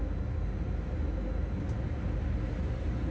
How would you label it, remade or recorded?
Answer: recorded